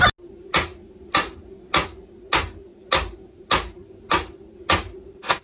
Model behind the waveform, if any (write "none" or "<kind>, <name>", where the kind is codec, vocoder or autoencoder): none